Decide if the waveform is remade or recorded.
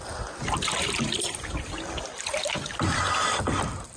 recorded